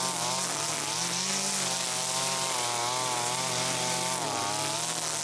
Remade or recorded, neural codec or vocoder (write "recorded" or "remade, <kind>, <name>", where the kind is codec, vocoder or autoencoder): recorded